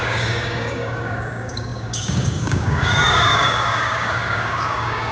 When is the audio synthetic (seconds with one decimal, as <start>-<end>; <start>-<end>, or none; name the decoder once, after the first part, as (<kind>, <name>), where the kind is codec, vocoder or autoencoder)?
0.0-5.1 (codec, DAC)